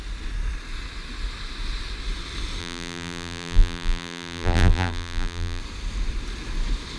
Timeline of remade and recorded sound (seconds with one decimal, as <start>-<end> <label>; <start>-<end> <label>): 0.0-2.6 recorded; 2.6-5.6 remade; 5.6-7.0 recorded